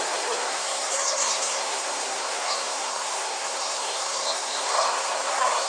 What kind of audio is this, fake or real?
fake